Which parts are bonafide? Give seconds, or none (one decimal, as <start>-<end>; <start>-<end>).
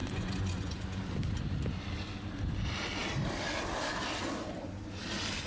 1.0-5.5